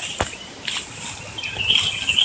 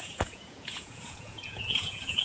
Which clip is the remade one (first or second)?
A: second